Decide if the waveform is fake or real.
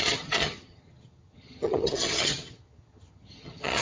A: fake